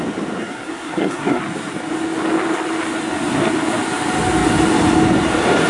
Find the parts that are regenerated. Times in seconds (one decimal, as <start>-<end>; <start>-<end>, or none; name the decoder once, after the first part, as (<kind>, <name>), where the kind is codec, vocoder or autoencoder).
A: 0.4-1.4 (codec, SNAC)